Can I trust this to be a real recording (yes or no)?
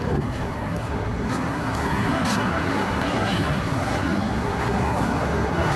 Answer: no